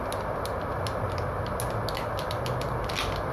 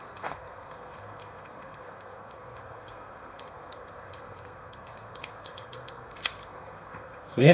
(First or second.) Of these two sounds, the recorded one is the first